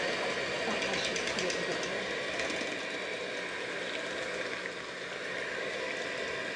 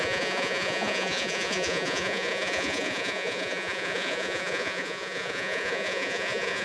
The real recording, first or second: first